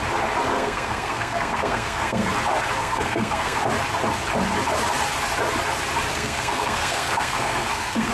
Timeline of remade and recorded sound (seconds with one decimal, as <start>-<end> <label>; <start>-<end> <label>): 0.0-0.5 recorded; 0.5-2.3 remade; 2.3-2.8 recorded; 2.8-3.6 remade; 3.6-6.1 recorded; 6.1-8.1 remade